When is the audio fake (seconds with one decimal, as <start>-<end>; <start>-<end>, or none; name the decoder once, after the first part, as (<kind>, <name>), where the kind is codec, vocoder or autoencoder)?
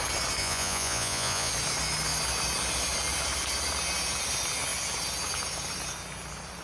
0.4-1.5 (vocoder, Vocos)